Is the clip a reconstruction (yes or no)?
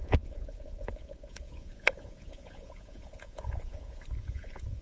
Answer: yes